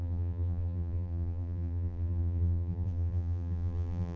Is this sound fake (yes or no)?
yes